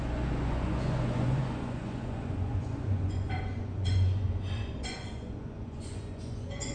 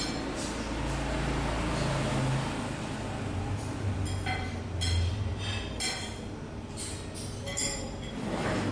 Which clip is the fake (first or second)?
first